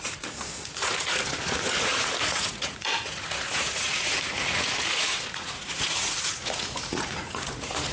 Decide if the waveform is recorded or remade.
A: remade